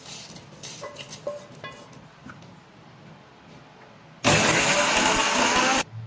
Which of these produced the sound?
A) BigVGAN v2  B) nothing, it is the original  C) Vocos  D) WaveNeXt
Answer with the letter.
B